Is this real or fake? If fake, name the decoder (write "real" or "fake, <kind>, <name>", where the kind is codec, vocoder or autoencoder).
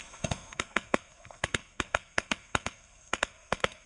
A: fake, codec, SNAC